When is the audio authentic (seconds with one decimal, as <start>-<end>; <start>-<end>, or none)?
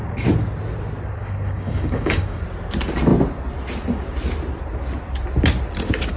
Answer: 0.0-1.2; 2.4-6.2